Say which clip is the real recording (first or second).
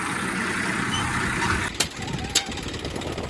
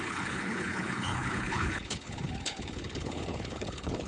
first